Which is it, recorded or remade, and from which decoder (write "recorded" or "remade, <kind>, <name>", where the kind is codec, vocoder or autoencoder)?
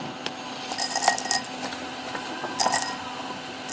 recorded